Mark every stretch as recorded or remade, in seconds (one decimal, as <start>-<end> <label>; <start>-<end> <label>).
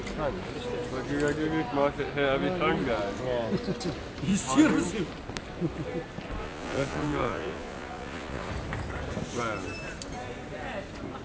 0.0-6.4 recorded; 6.4-8.5 remade; 8.5-11.2 recorded